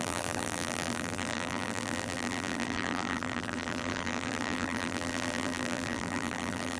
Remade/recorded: remade